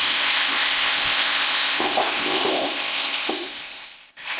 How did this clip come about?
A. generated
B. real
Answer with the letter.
A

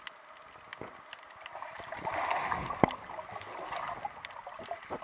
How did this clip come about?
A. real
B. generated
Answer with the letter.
A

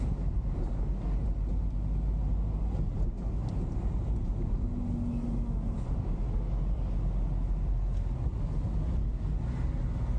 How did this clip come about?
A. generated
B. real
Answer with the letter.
B